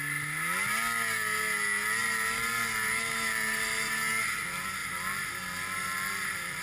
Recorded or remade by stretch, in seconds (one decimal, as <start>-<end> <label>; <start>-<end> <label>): 0.0-2.0 recorded; 2.0-4.1 remade; 4.1-4.8 recorded; 4.8-6.6 remade